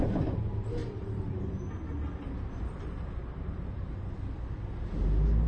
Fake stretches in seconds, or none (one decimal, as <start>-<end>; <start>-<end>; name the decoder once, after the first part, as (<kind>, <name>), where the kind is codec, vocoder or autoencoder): 0.8-4.1 (vocoder, BigVGAN v2)